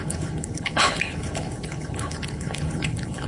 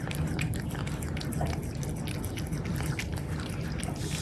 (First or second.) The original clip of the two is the second